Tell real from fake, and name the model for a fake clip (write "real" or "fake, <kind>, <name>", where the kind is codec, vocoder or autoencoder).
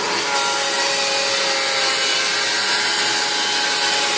real